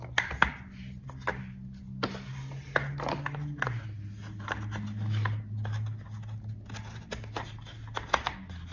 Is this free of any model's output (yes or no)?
yes